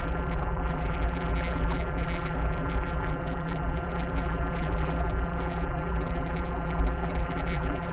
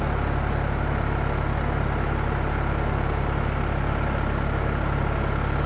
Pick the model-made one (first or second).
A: first